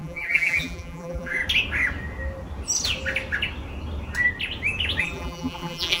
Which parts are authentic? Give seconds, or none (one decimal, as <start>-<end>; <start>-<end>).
1.4-5.0